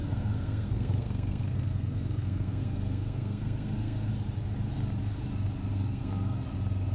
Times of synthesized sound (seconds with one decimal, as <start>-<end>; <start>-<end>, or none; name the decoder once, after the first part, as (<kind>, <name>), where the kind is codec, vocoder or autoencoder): 0.0-4.1 (codec, SNAC); 5.7-6.5